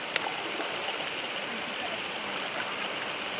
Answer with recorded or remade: recorded